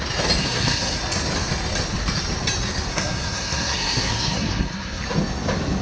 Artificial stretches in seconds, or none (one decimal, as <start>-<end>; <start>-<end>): 0.4-1.0; 2.9-5.0